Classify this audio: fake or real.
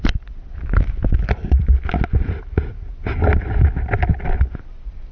real